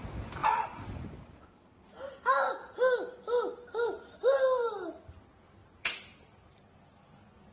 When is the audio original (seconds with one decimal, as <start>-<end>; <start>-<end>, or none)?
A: 0.0-0.4; 1.1-5.6; 6.5-7.5